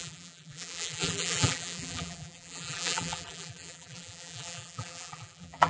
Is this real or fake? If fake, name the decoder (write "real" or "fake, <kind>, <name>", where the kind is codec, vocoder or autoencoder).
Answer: fake, vocoder, BigVGAN v2